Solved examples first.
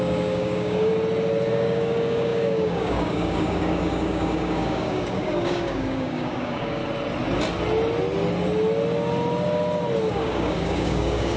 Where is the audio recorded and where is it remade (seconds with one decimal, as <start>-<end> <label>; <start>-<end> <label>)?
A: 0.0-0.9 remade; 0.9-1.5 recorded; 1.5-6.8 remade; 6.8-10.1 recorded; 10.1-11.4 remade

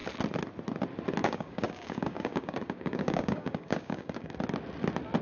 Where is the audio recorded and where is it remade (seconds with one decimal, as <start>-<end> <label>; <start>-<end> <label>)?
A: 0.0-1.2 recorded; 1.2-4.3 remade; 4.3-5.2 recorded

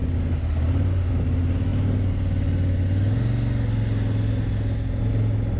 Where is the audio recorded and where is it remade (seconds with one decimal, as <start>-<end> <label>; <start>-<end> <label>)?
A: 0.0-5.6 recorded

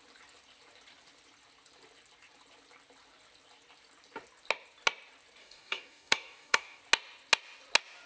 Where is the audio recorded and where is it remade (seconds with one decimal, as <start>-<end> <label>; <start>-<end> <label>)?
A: 0.0-5.4 recorded; 5.4-6.8 remade; 6.8-8.1 recorded

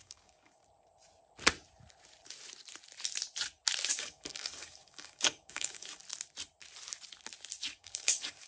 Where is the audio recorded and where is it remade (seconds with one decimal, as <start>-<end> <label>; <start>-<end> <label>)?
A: 0.0-0.6 remade; 0.6-3.9 recorded; 3.9-6.0 remade; 6.0-7.7 recorded; 7.7-8.5 remade

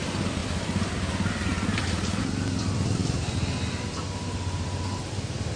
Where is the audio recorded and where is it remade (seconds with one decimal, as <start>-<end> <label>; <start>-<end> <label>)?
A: 0.0-5.6 recorded

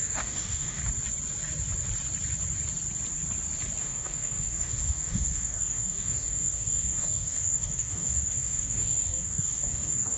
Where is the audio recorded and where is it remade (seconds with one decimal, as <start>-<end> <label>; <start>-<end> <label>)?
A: 0.0-0.8 remade; 0.8-3.8 recorded; 3.8-10.2 remade